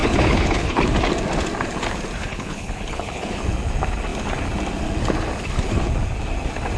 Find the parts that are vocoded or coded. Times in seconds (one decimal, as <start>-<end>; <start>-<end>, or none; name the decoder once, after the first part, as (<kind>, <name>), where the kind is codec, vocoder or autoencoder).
0.0-0.8 (codec, HILCodec); 2.2-3.4